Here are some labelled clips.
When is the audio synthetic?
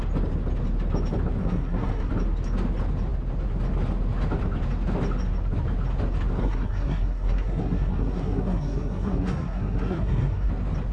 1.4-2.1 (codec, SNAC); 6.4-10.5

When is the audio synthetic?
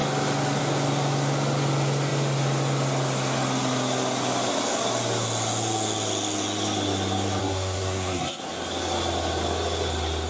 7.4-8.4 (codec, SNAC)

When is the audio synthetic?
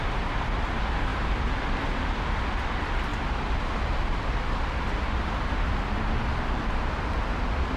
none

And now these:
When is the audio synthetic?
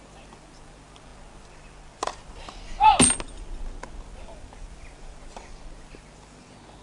none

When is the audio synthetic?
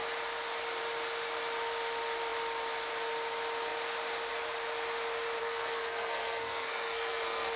5.4-7.6 (codec, SNAC)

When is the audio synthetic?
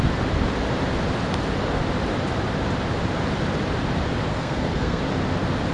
4.3-5.0 (codec, SNAC)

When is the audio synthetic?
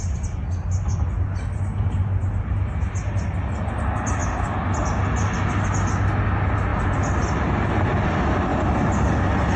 none